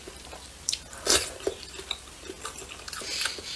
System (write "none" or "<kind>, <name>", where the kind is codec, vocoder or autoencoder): none